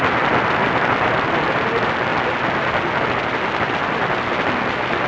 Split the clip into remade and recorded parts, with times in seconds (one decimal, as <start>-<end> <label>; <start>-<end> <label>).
0.0-5.1 recorded